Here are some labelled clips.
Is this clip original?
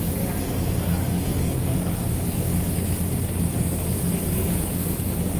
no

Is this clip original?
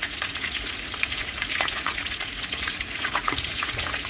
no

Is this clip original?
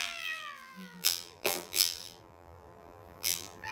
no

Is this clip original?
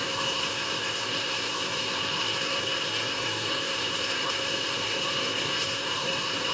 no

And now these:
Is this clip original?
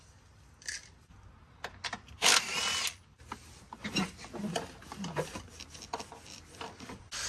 yes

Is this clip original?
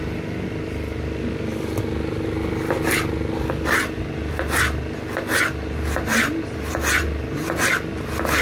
yes